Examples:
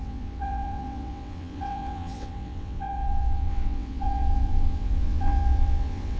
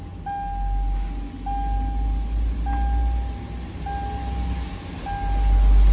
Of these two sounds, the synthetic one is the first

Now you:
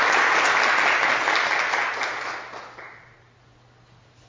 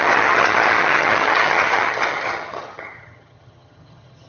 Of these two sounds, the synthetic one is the second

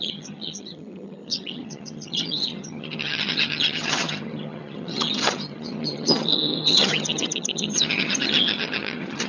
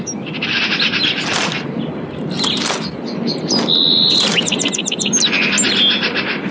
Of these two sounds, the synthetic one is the first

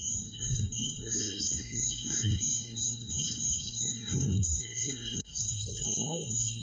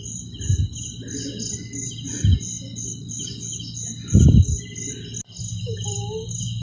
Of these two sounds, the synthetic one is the first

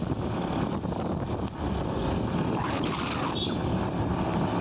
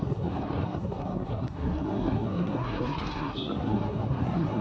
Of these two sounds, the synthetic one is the second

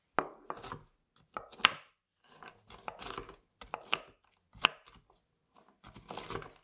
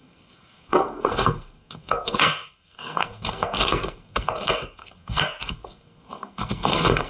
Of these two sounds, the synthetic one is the second